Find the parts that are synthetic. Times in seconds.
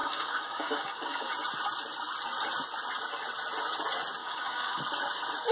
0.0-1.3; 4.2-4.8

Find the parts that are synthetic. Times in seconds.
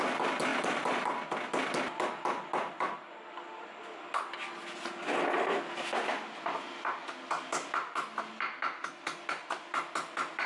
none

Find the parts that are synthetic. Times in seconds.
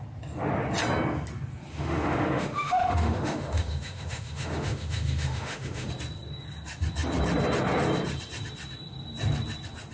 1.7-5.9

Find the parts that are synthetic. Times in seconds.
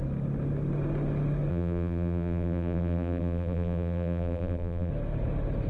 1.5-4.9